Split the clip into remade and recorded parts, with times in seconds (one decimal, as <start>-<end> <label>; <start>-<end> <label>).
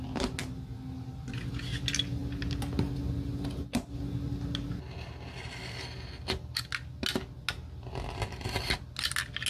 0.0-9.5 recorded